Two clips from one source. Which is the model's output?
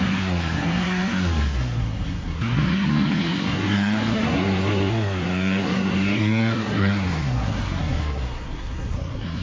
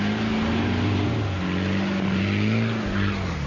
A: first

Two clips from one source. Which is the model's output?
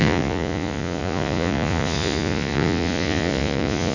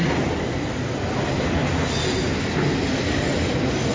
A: first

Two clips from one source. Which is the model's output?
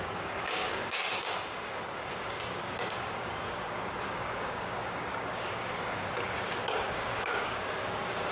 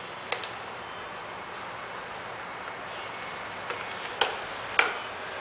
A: first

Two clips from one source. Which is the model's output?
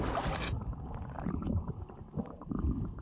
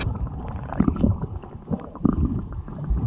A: second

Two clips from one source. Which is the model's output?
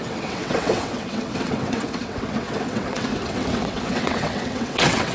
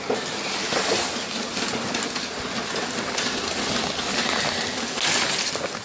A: first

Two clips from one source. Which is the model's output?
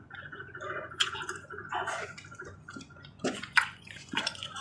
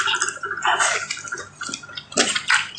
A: first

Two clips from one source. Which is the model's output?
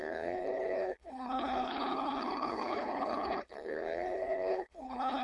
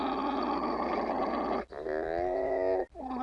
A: first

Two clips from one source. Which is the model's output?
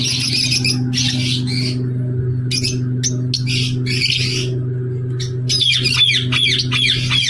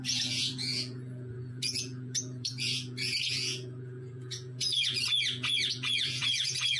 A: second